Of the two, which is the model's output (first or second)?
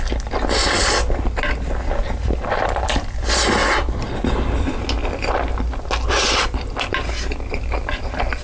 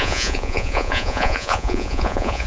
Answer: second